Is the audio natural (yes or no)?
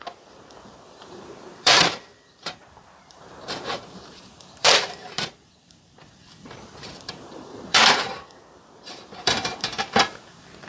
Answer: no